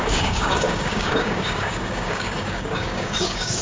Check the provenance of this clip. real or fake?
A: fake